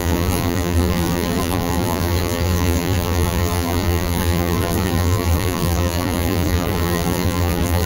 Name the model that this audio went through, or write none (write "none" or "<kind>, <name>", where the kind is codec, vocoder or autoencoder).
vocoder, BigVGAN v2